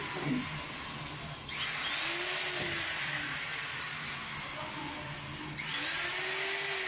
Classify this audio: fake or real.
real